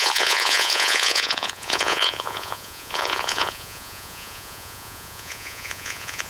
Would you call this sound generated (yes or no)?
yes